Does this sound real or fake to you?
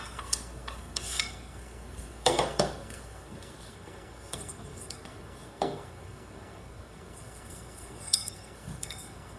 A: fake